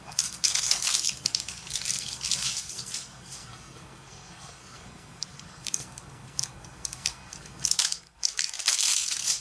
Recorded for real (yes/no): no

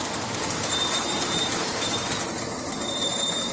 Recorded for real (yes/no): no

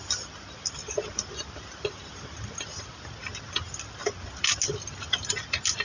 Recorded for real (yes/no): yes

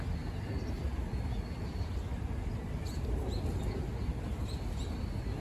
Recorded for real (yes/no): yes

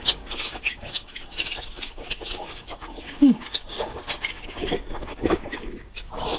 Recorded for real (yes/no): no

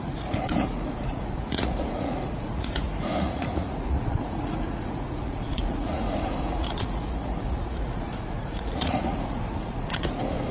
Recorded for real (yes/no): no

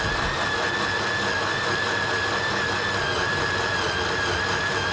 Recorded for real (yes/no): yes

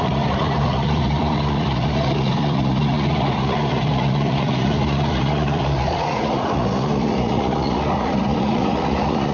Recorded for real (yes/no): no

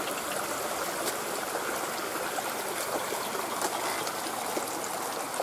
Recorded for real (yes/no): yes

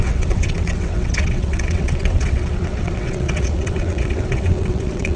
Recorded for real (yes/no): no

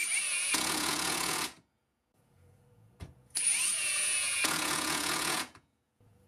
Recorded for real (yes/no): no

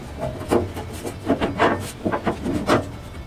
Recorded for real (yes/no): yes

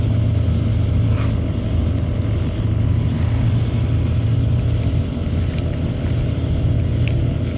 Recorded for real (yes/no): yes